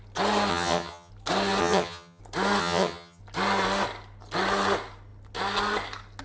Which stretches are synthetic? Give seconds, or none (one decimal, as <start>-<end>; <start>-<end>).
0.5-1.1; 1.6-2.2; 2.6-3.2